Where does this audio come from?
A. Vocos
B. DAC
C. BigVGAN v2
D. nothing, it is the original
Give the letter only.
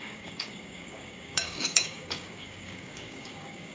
B